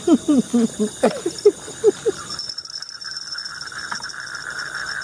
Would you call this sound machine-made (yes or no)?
no